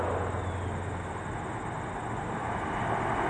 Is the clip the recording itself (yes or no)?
yes